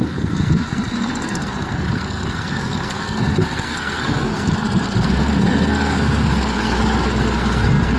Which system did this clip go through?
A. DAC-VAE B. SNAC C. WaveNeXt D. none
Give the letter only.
B